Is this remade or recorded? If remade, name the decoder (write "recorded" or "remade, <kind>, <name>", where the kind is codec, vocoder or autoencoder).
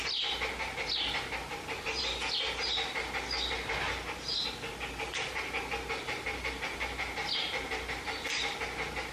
recorded